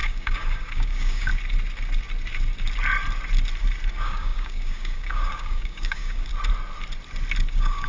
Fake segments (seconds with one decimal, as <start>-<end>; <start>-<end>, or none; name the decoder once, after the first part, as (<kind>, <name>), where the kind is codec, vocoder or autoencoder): 0.0-1.3 (codec, DAC); 3.9-6.3; 7.5-7.9